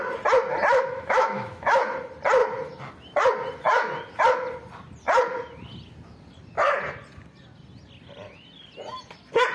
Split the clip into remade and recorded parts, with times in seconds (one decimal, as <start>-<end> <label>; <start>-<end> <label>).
0.0-0.7 recorded; 0.7-1.8 remade; 1.8-9.5 recorded